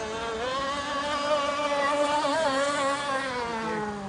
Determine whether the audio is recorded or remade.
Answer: recorded